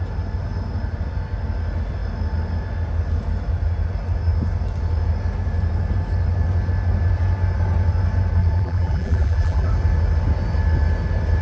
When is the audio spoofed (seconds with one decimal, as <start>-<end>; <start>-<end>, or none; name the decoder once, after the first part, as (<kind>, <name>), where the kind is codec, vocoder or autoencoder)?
8.4-9.7 (vocoder, BigVGAN v2)